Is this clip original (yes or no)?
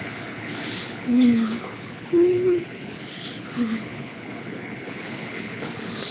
no